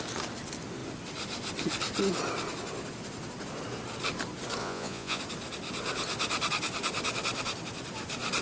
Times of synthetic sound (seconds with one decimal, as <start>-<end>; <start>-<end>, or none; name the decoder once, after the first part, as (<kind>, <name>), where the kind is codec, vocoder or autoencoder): 4.6-5.2 (vocoder, Vocos)